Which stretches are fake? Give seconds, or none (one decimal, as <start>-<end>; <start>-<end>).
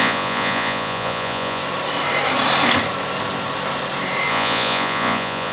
0.0-1.6; 4.3-5.5